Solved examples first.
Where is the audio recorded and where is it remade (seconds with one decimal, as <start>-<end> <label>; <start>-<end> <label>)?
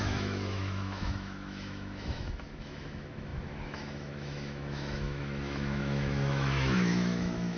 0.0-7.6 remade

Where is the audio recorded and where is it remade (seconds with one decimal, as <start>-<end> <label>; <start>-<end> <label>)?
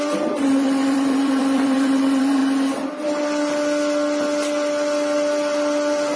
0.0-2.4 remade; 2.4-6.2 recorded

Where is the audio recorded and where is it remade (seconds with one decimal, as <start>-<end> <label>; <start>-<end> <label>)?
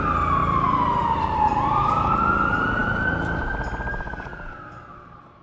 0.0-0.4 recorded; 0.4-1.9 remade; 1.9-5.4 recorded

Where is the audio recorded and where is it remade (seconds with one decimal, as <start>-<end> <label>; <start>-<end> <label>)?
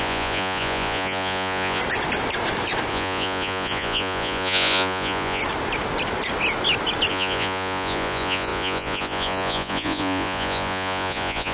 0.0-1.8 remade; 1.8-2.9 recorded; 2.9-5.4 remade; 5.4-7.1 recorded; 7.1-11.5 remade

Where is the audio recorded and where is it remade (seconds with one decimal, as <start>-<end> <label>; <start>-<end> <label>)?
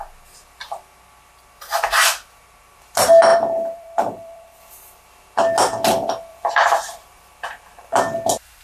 0.0-3.3 recorded; 3.3-4.6 remade; 4.6-6.3 recorded; 6.3-8.0 remade; 8.0-8.6 recorded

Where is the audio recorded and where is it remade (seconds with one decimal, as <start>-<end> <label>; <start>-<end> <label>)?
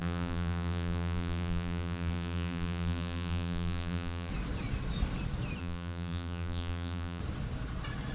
0.0-4.3 remade; 4.3-5.6 recorded; 5.6-7.2 remade; 7.2-8.1 recorded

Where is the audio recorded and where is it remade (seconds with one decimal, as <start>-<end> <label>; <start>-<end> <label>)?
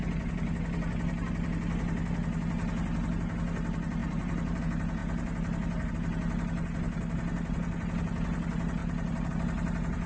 0.0-4.0 recorded; 4.0-4.6 remade; 4.6-8.8 recorded; 8.8-9.3 remade; 9.3-10.1 recorded